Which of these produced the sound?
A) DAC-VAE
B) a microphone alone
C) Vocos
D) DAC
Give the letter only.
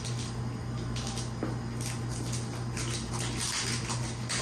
B